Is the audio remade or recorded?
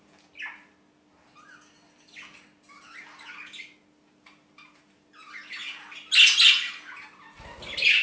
recorded